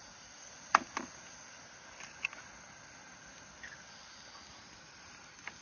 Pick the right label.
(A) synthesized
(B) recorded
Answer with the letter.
B